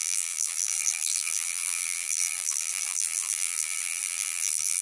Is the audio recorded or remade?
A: remade